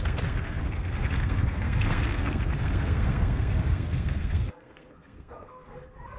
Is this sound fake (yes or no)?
yes